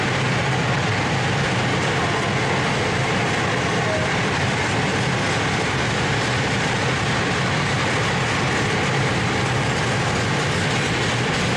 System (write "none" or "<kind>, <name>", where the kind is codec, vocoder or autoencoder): none